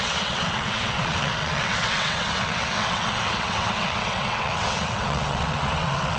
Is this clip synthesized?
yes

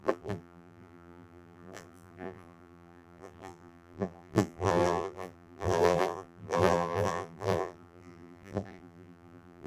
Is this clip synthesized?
yes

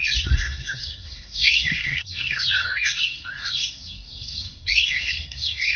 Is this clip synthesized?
yes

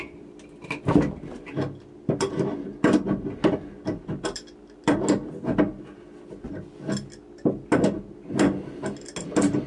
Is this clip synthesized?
no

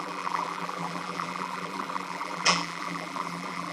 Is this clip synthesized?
yes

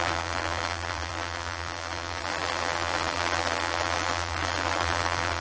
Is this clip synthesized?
yes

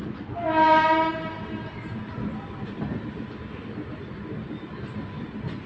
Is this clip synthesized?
no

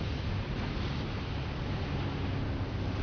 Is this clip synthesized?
no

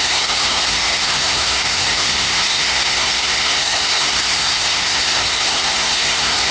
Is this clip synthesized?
yes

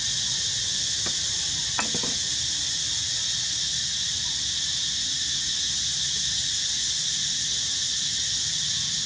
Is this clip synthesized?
no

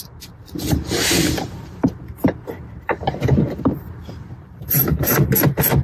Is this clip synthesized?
yes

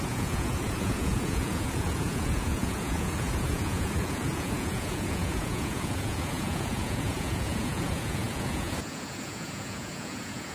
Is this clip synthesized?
yes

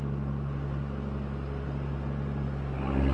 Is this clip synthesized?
no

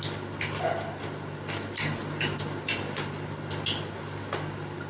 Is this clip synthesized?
no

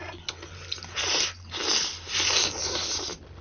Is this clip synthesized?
no